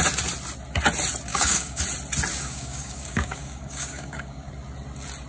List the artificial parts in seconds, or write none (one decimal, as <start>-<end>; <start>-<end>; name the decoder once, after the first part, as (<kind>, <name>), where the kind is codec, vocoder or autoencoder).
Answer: 1.3-1.8 (codec, DAC); 2.3-4.5